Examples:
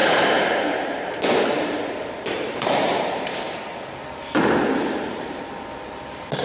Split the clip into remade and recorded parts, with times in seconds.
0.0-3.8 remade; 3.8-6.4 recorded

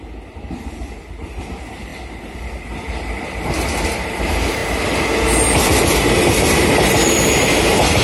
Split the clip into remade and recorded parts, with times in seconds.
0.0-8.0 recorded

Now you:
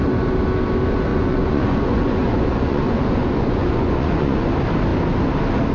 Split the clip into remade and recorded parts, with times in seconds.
0.0-1.1 recorded; 1.1-4.5 remade; 4.5-5.7 recorded